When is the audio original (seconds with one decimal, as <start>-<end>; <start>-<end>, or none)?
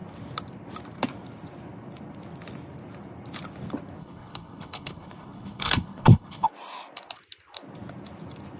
0.0-4.0; 6.5-8.6